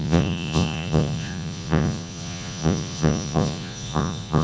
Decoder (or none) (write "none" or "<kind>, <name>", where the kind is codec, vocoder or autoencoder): vocoder, Vocos